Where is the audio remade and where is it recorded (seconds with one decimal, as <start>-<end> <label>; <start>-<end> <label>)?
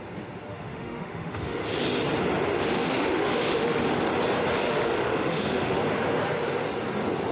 0.0-0.5 recorded; 0.5-1.6 remade; 1.6-2.5 recorded; 2.5-4.1 remade; 4.1-4.5 recorded; 4.5-5.8 remade; 5.8-7.3 recorded